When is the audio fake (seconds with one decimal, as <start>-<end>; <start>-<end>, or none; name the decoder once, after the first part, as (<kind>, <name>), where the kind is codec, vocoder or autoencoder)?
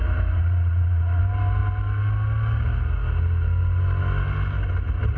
0.4-1.2 (vocoder, Vocos)